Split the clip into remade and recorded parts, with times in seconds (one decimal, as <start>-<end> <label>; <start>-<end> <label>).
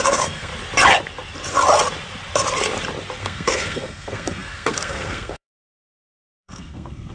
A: 0.0-0.5 remade; 0.5-3.2 recorded; 3.2-7.1 remade